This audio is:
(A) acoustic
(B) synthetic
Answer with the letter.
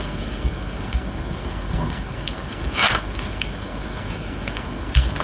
B